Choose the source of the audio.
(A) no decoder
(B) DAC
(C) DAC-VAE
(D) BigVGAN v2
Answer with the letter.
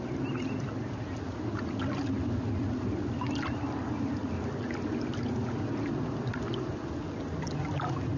A